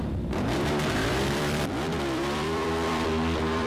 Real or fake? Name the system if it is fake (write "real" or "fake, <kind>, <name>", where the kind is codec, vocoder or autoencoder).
fake, vocoder, BigVGAN v2